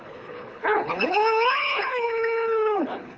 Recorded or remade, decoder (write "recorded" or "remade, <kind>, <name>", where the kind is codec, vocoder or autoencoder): remade, codec, HILCodec